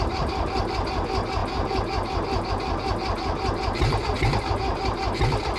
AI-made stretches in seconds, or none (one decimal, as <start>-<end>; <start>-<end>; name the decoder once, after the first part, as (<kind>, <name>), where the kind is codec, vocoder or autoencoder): none